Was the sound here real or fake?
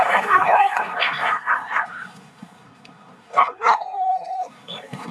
fake